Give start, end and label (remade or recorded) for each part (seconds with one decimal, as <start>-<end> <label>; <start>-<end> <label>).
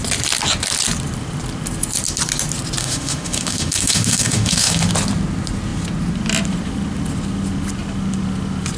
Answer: 0.0-2.8 recorded; 2.8-4.9 remade; 4.9-8.8 recorded